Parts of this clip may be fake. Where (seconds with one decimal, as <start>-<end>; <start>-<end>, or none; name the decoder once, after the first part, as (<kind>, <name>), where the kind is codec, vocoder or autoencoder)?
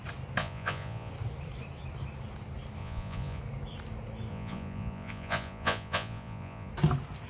0.4-1.1 (vocoder, Vocos); 2.8-3.4; 4.3-6.7